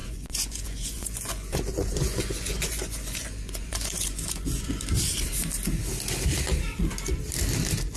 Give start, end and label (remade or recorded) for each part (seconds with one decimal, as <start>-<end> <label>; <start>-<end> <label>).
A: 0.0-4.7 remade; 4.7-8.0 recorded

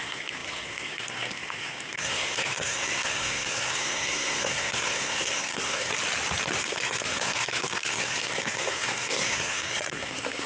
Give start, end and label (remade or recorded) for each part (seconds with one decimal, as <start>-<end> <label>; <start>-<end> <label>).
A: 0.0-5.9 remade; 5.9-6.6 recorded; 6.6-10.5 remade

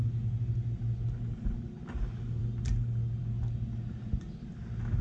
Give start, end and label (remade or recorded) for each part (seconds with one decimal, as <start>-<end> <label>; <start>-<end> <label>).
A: 0.0-5.0 recorded

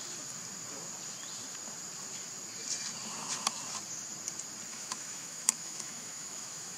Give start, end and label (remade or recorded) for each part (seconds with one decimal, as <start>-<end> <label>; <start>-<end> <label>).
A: 0.0-4.7 recorded; 4.7-6.8 remade

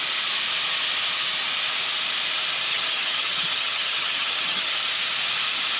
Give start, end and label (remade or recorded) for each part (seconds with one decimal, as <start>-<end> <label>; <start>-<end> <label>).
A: 0.0-2.7 recorded; 2.7-4.7 remade; 4.7-5.8 recorded

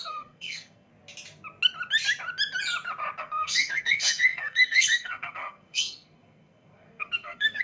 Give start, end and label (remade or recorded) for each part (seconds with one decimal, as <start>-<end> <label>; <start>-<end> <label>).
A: 0.0-0.9 remade; 0.9-3.2 recorded; 3.2-7.6 remade

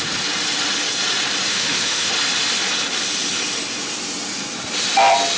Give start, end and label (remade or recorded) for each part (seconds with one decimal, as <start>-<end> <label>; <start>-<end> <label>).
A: 0.0-1.5 recorded; 1.5-2.1 remade; 2.1-5.4 recorded